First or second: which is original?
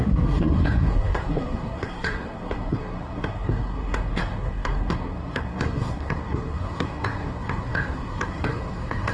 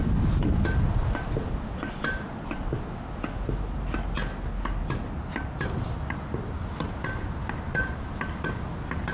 second